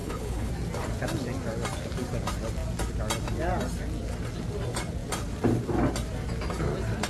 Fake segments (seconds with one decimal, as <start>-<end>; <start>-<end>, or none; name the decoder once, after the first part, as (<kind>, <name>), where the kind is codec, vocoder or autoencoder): 0.0-0.5 (codec, HILCodec)